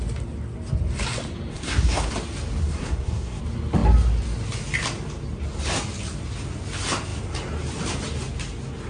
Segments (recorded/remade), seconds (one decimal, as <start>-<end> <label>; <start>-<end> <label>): 0.0-1.5 recorded; 1.5-2.1 remade; 2.1-2.6 recorded; 2.6-3.4 remade; 3.4-8.9 recorded